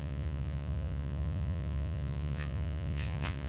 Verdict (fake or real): fake